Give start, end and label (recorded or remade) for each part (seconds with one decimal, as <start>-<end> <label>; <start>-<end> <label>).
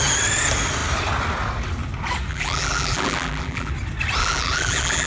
0.0-2.3 recorded; 2.3-3.7 remade; 3.7-4.2 recorded; 4.2-5.1 remade